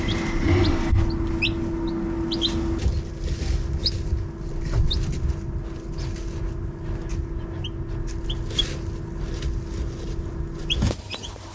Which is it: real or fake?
real